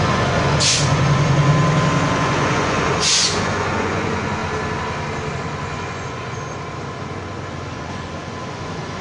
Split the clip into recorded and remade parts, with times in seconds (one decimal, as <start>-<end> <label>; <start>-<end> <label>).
0.0-1.5 remade; 1.5-2.1 recorded; 2.1-4.4 remade; 4.4-5.3 recorded; 5.3-9.0 remade